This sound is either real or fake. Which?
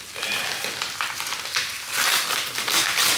real